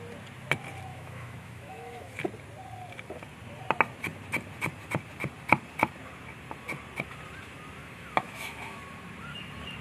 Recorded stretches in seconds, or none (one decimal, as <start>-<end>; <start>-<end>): 0.0-0.9; 2.2-7.8; 8.8-9.8